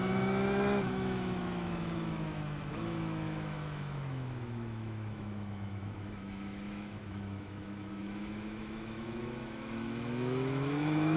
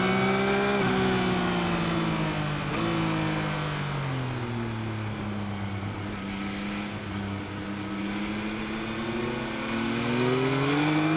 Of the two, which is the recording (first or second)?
second